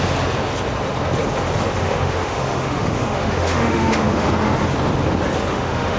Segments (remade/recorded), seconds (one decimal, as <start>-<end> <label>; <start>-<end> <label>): 0.0-1.8 recorded; 1.8-4.3 remade; 4.3-5.5 recorded; 5.5-6.0 remade